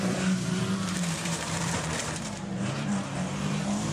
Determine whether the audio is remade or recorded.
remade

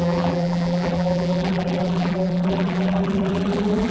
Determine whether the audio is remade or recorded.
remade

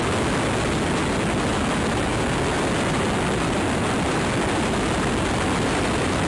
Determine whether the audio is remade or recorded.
recorded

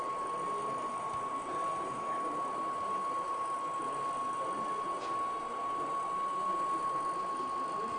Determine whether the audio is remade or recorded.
recorded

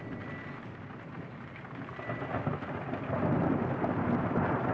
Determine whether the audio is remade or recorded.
recorded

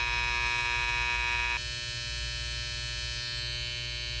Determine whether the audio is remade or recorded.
recorded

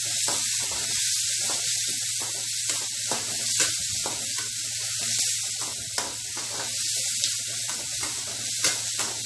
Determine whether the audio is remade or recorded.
recorded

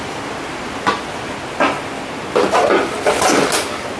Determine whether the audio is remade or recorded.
recorded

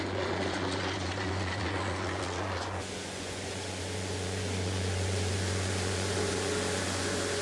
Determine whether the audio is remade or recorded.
remade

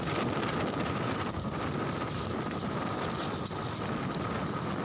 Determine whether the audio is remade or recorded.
recorded